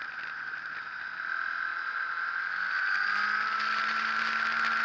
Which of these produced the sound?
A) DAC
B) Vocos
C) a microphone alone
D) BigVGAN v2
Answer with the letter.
C